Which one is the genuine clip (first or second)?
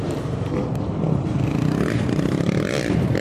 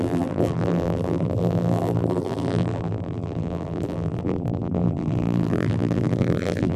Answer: first